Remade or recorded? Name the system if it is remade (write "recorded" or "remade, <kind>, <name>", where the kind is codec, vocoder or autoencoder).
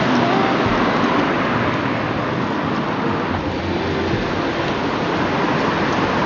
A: recorded